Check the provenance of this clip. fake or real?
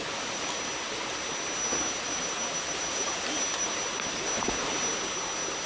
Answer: real